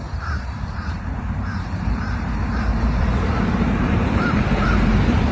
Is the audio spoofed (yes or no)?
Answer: yes